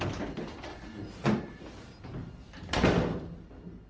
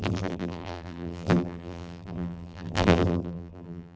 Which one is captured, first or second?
first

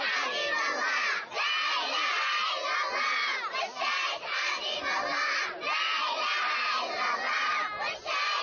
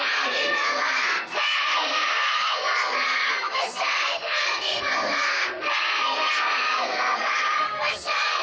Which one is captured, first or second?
first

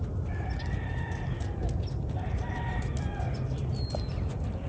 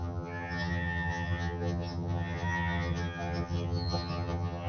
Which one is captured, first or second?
first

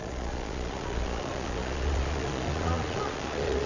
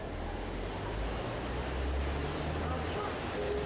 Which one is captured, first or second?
second